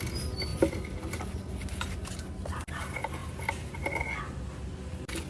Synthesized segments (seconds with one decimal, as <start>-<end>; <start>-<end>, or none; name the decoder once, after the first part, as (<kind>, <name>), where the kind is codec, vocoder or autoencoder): none